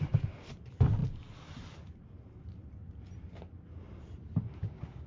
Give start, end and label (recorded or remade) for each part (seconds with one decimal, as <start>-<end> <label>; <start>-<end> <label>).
0.0-4.6 recorded; 4.6-5.1 remade